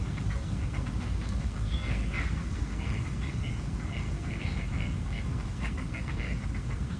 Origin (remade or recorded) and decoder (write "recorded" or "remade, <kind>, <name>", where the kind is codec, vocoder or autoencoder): remade, codec, SNAC